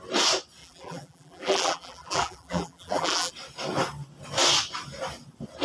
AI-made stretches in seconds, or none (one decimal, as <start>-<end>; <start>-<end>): 0.6-3.3

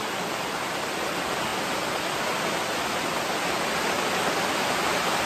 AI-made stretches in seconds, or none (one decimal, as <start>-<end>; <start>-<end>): none

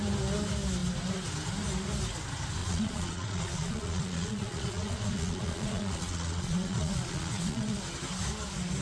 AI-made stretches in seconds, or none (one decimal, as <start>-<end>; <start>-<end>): 2.6-7.8

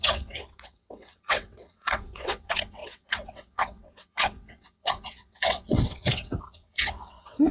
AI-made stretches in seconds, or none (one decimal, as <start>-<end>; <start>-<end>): 0.0-7.5